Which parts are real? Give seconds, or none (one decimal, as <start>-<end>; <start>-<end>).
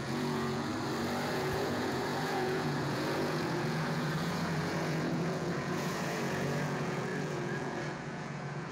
0.7-1.3